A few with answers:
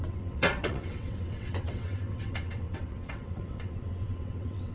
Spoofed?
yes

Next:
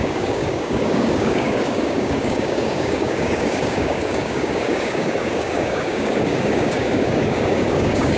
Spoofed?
yes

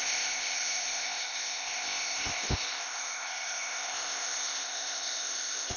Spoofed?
yes